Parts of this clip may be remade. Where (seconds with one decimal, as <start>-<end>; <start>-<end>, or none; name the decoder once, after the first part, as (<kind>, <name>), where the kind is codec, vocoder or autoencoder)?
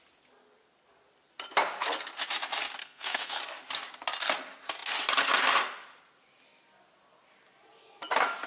2.8-3.4 (codec, SNAC)